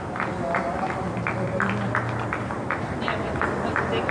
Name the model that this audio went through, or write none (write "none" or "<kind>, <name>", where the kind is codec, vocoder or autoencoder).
none